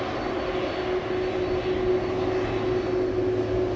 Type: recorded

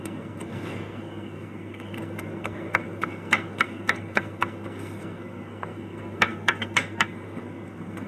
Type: remade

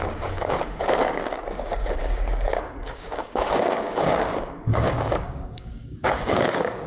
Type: remade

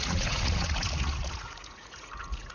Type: remade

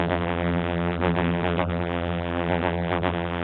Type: remade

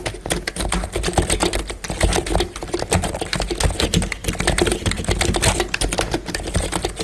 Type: recorded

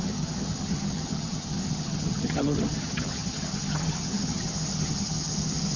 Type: remade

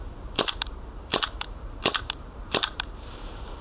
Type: remade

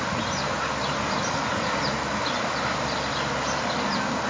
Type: recorded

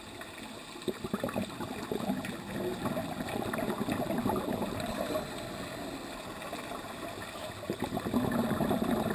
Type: recorded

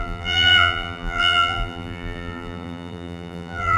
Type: remade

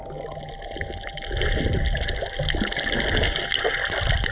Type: recorded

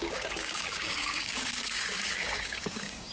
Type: remade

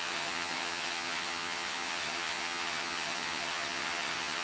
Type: remade